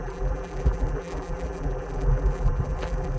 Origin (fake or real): fake